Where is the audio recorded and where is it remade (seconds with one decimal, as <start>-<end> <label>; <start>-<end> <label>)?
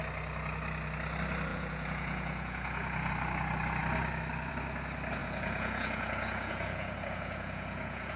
0.0-1.5 recorded; 1.5-3.1 remade; 3.1-5.2 recorded; 5.2-8.2 remade